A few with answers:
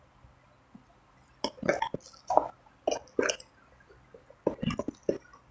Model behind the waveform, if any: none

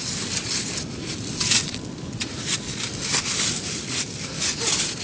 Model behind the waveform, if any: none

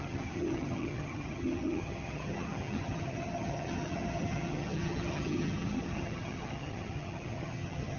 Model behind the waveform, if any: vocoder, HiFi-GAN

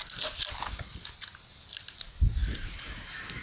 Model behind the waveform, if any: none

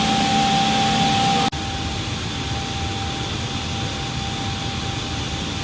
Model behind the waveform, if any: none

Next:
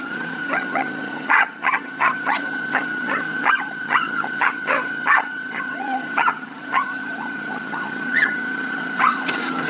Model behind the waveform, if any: vocoder, HiFi-GAN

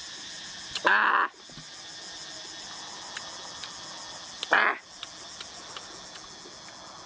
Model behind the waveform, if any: none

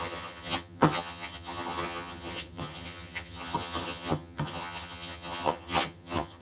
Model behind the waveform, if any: vocoder, HiFi-GAN